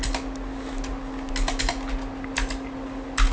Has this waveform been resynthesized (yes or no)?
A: no